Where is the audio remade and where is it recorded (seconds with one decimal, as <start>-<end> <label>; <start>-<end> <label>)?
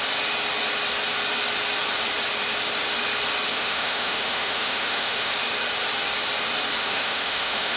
0.0-3.5 recorded; 3.5-5.3 remade; 5.3-6.8 recorded; 6.8-7.8 remade